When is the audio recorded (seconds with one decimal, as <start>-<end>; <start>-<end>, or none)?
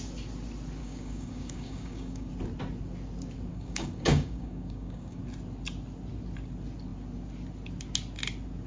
0.0-0.8; 2.3-3.5; 5.2-8.7